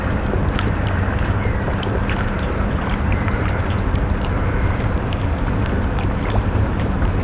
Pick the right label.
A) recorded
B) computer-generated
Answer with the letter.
B